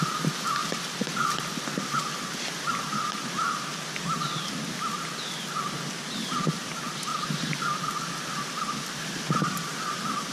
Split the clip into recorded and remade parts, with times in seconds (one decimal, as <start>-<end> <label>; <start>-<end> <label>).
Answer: 0.0-0.6 remade; 0.6-5.6 recorded; 5.6-7.1 remade; 7.1-9.8 recorded; 9.8-10.3 remade